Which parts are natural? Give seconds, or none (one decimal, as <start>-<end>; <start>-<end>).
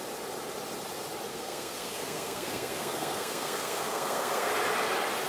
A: 0.0-1.3; 4.5-5.3